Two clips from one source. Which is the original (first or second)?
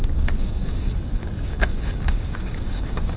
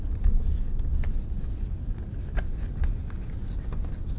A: second